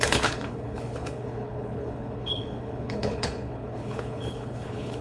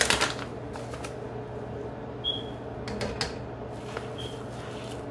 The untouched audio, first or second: second